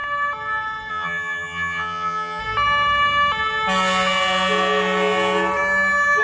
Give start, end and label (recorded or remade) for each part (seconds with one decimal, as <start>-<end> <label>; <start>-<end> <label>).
0.0-0.9 recorded; 0.9-2.4 remade; 2.4-6.2 recorded

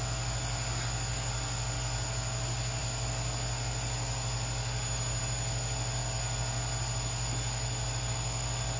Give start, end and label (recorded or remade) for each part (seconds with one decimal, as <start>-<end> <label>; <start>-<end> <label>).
0.0-8.8 recorded

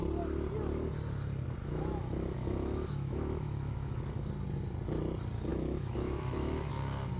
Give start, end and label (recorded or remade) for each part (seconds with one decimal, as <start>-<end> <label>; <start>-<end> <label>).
0.0-1.6 recorded; 1.6-4.0 remade; 4.0-5.5 recorded; 5.5-6.7 remade; 6.7-7.2 recorded